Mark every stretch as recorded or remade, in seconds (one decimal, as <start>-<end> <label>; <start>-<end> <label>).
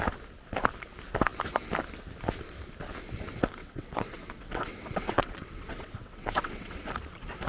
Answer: 0.0-3.6 recorded; 3.6-6.9 remade; 6.9-7.5 recorded